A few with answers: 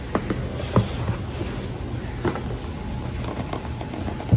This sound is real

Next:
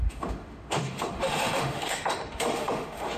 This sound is fake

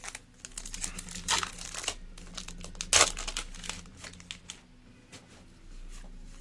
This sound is real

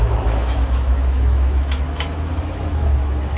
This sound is fake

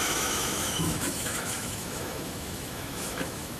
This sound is fake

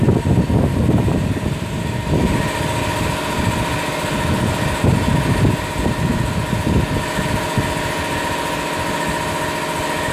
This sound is real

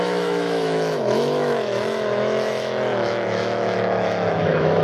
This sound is fake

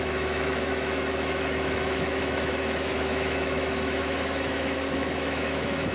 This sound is fake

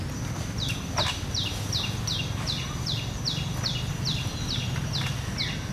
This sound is real